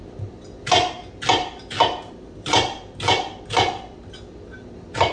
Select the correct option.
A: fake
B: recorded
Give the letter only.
B